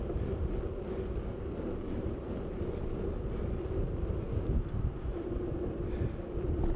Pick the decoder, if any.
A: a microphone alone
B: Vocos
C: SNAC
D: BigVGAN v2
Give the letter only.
A